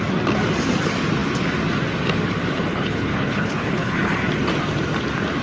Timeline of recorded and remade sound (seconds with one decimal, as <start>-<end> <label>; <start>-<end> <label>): 0.0-2.7 recorded; 2.7-4.1 remade; 4.1-5.4 recorded